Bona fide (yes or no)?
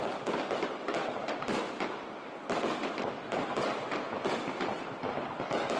yes